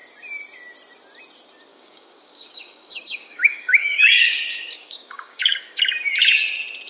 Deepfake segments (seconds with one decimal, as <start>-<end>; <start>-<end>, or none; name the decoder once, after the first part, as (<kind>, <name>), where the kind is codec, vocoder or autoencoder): 1.7-5.8 (codec, DAC)